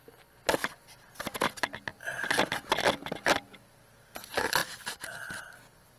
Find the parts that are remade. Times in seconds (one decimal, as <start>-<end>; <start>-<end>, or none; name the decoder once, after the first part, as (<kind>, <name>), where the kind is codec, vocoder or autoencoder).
none